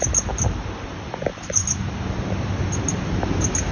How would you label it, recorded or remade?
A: recorded